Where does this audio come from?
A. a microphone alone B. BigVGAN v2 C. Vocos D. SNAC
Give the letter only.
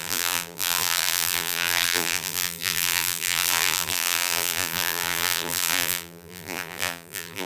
B